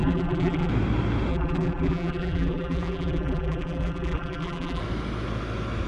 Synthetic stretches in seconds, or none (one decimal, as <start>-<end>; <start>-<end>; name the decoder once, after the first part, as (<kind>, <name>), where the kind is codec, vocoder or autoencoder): 0.0-0.7 (vocoder, BigVGAN v2); 1.3-4.8